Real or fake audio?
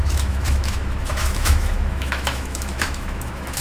fake